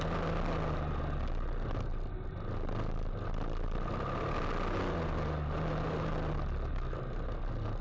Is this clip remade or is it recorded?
recorded